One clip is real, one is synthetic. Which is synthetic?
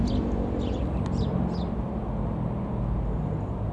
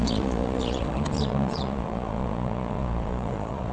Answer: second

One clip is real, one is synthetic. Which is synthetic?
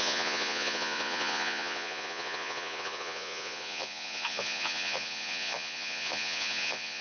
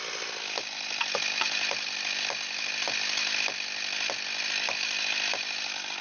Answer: first